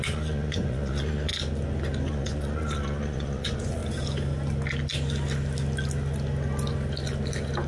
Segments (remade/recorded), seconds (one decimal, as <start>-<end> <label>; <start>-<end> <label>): 0.0-1.3 remade; 1.3-2.1 recorded; 2.1-3.8 remade; 3.8-7.7 recorded